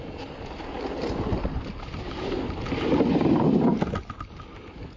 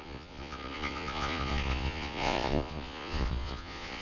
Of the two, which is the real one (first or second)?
first